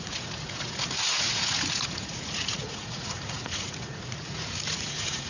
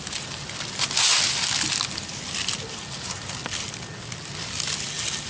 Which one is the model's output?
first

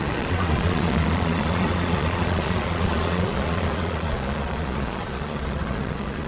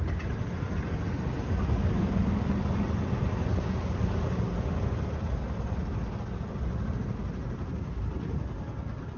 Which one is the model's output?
first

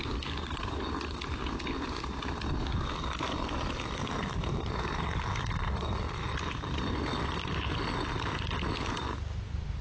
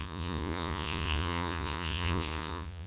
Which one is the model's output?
second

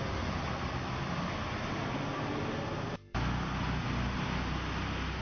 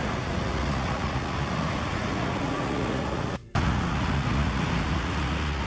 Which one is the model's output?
second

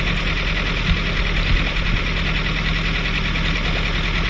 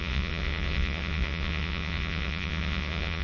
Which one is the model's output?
second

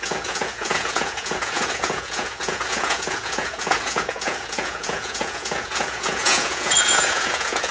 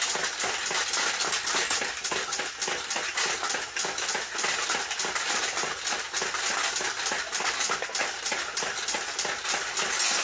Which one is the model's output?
first